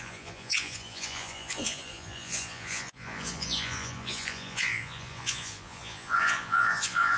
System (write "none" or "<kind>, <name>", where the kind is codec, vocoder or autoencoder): vocoder, Vocos